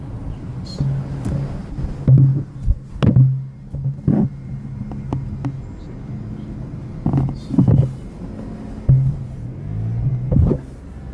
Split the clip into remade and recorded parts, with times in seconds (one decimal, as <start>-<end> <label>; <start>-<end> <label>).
0.0-11.1 recorded